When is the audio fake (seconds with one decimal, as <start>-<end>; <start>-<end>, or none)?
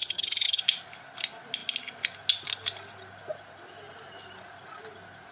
0.0-0.6